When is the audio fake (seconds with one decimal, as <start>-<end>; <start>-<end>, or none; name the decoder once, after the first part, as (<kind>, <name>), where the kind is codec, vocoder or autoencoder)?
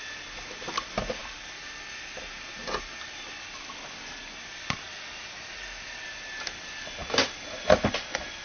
none